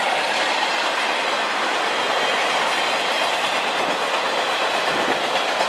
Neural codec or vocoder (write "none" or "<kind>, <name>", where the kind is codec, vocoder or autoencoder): none